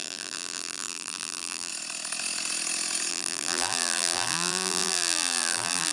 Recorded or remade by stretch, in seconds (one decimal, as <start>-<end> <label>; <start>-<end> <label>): 0.0-1.7 remade; 1.7-3.1 recorded; 3.1-5.9 remade